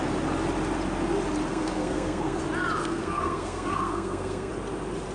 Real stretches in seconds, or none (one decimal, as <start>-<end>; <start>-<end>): 0.0-1.5; 2.4-2.8; 4.5-5.1